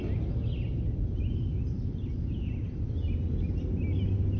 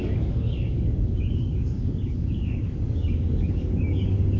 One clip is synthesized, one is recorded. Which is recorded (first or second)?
first